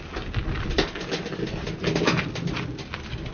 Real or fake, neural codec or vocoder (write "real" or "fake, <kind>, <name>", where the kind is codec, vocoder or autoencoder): real